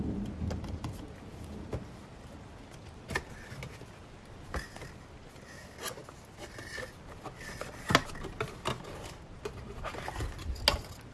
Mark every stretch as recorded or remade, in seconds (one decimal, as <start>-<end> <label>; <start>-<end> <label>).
0.0-11.1 recorded